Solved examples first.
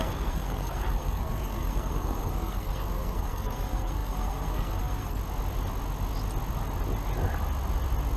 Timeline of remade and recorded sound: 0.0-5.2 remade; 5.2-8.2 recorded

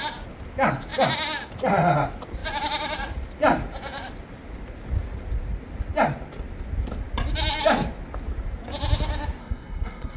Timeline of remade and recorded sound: 0.0-9.4 recorded; 9.4-10.2 remade

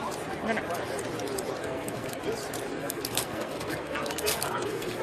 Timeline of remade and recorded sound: 0.0-1.6 recorded; 1.6-2.2 remade; 2.2-2.7 recorded; 2.7-5.0 remade